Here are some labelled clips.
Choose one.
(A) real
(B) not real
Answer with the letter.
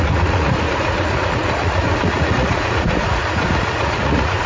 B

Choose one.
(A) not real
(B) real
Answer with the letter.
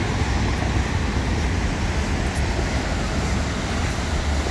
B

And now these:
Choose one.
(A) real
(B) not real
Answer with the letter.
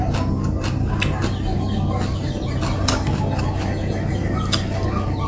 A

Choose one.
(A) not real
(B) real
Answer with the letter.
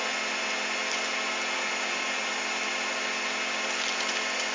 B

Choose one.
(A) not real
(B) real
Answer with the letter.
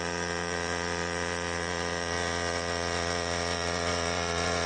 A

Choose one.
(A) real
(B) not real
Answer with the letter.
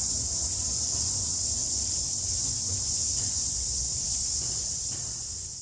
B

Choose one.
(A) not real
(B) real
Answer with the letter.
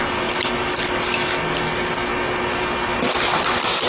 B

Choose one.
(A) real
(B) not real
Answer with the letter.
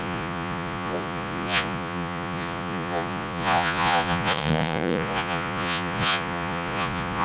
B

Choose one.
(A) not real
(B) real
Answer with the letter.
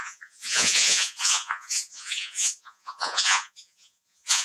A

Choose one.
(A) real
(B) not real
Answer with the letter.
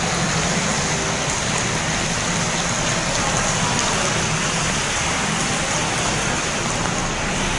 A